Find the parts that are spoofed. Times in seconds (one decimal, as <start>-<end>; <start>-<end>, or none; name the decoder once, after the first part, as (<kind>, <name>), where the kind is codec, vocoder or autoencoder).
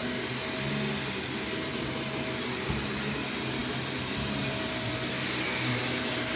none